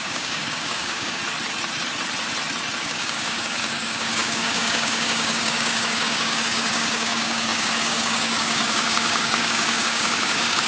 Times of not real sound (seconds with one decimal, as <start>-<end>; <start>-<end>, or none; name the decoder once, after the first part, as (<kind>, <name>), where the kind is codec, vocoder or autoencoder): 0.0-1.2 (codec, DAC); 2.8-10.7